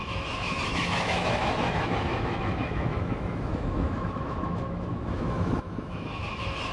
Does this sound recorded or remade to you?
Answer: remade